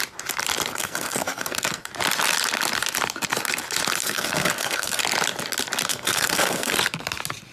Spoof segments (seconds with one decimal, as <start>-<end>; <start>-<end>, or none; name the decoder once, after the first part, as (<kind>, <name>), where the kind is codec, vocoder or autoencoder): 0.7-1.9 (codec, SNAC); 4.0-5.0; 5.9-6.7